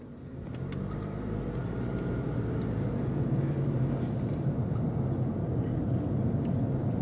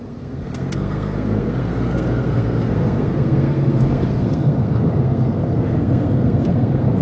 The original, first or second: first